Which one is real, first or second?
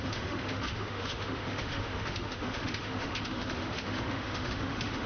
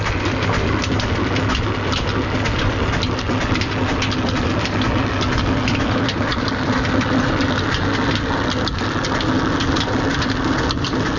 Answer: second